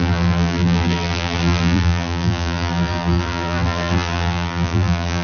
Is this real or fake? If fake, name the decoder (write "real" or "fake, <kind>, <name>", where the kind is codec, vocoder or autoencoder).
fake, vocoder, BigVGAN v2